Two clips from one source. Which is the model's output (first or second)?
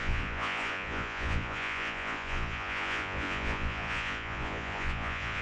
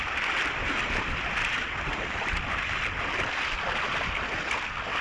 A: first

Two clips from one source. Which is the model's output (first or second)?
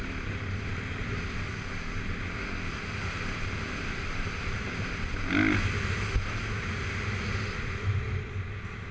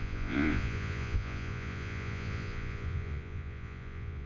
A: second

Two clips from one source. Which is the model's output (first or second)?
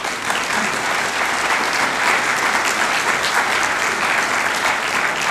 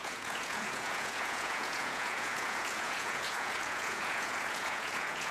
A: second